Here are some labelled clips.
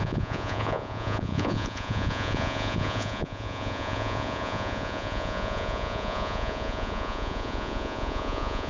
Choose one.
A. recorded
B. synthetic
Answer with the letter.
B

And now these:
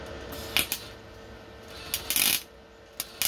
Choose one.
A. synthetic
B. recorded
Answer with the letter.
B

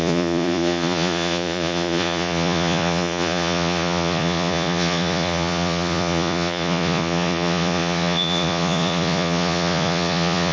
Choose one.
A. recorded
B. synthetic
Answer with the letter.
B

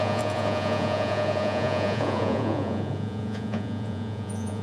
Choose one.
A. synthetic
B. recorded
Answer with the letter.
A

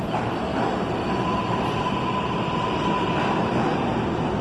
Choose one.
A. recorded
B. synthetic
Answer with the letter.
A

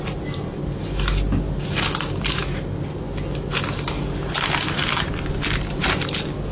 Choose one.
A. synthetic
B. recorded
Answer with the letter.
B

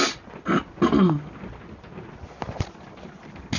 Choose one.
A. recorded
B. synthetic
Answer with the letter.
A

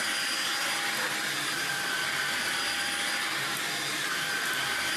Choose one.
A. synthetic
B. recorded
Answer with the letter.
B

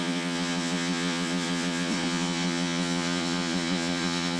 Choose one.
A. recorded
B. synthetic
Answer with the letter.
B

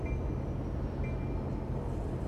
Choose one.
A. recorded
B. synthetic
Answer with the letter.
A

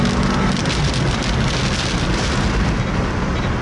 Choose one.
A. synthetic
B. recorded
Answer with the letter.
B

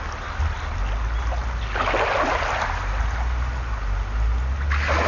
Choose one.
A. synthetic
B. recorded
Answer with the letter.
B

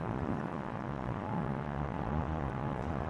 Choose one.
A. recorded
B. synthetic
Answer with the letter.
B